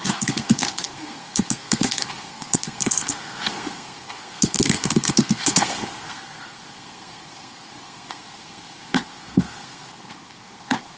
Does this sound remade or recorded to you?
remade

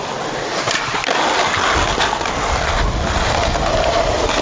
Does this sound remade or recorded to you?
recorded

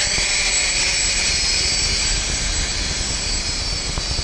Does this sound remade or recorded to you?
recorded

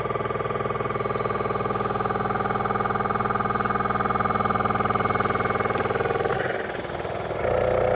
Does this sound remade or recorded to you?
recorded